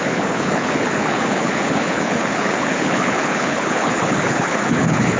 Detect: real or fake fake